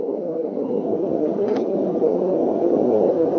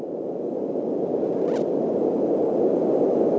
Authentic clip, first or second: second